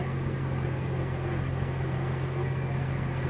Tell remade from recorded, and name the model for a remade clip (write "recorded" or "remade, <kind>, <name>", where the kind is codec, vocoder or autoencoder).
remade, codec, SNAC